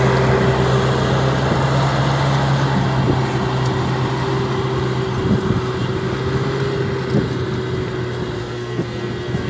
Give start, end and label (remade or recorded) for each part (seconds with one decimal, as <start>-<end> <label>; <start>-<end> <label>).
0.0-8.4 recorded; 8.4-9.5 remade

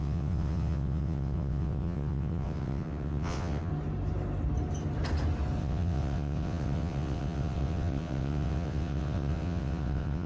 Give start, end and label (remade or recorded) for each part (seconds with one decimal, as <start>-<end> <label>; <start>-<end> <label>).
0.0-3.7 remade; 3.7-5.6 recorded; 5.6-10.3 remade

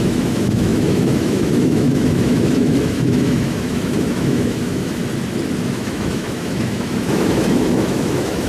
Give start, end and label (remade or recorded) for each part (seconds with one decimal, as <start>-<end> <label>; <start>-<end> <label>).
0.0-5.0 remade; 5.0-5.6 recorded; 5.6-8.5 remade

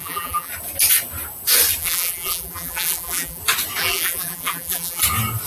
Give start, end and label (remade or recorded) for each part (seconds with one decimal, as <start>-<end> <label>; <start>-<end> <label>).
0.0-0.5 remade; 0.5-1.8 recorded; 1.8-3.4 remade; 3.4-3.8 recorded; 3.8-5.0 remade; 5.0-5.5 recorded

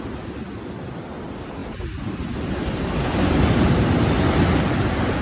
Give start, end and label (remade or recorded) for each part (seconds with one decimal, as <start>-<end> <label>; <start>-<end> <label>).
0.0-5.2 recorded

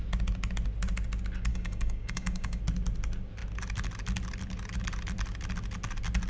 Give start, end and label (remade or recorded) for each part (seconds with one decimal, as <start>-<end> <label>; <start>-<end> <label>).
0.0-1.5 recorded; 1.5-2.6 remade; 2.6-6.3 recorded

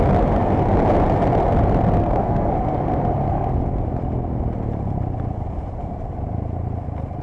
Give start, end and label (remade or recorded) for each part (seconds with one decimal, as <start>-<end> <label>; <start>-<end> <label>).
0.0-2.0 recorded; 2.0-2.5 remade; 2.5-7.2 recorded

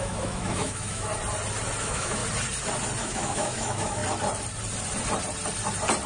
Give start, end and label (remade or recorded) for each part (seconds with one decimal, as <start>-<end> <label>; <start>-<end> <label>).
0.0-1.1 remade; 1.1-1.8 recorded; 1.8-2.2 remade; 2.2-3.0 recorded; 3.0-4.0 remade; 4.0-6.1 recorded